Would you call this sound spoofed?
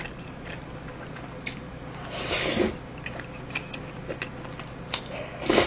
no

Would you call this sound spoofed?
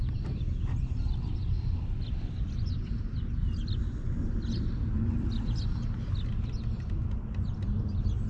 no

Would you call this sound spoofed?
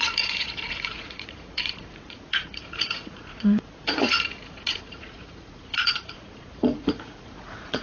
yes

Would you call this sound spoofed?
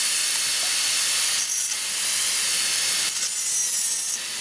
no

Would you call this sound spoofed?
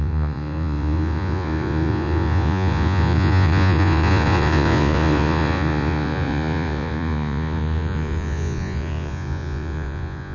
yes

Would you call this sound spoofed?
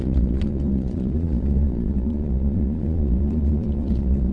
yes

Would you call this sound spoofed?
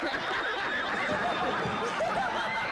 no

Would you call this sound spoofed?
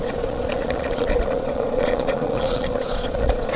yes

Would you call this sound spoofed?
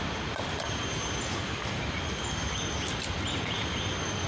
no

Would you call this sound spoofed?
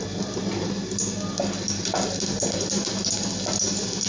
no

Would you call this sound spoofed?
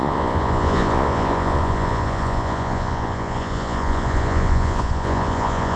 yes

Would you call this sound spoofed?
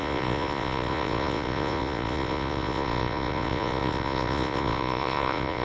yes